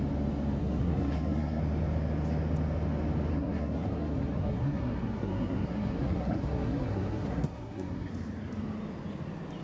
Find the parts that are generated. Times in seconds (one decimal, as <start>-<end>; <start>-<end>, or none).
0.6-1.6; 3.3-8.1